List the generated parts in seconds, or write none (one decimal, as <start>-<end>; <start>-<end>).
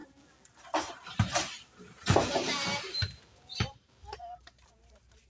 0.0-5.3